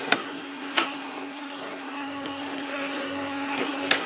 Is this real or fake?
fake